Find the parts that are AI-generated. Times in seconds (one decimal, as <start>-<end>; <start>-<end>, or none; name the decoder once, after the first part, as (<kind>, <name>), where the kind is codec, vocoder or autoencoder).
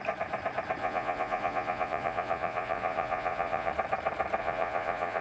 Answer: 0.8-3.7 (vocoder, Vocos); 4.4-5.2